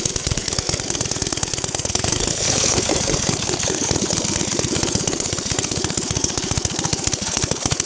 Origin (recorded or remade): remade